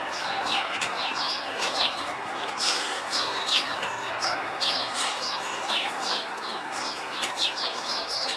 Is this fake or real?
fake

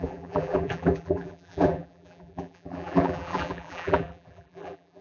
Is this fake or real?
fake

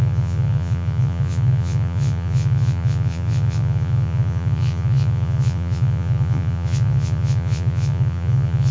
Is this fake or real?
fake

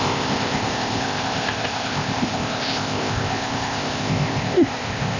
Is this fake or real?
fake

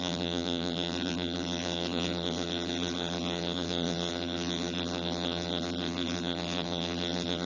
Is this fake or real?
fake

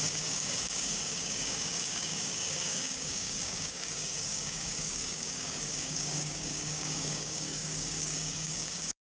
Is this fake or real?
fake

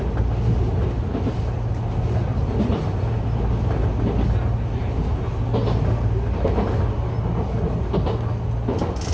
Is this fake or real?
real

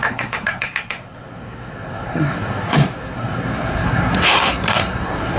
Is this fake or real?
fake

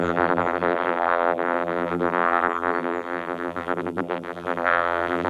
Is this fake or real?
fake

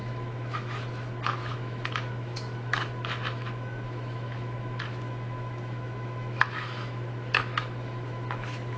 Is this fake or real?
fake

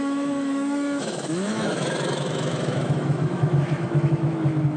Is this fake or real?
fake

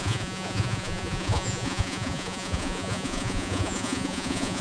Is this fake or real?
fake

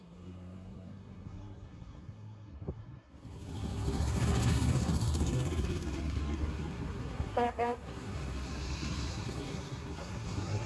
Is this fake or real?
fake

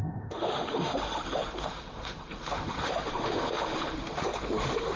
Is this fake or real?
fake